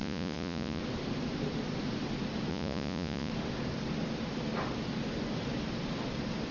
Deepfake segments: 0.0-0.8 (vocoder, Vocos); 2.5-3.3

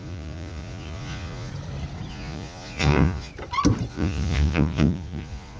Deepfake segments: 0.0-1.5 (vocoder, Vocos); 2.1-3.3; 3.9-5.6

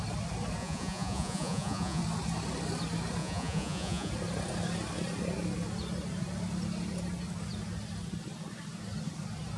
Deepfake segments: 0.6-2.0 (vocoder, Vocos); 3.2-4.1

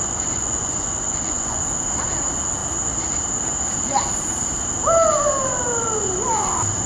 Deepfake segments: 0.0-1.6 (vocoder, Vocos)

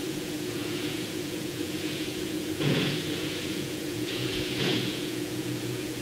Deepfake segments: 0.0-6.0 (vocoder, Vocos)

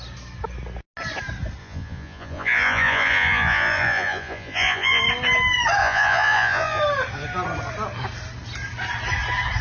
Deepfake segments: 1.6-5.0 (vocoder, Vocos); 5.8-6.8